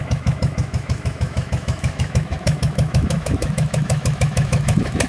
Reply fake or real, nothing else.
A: fake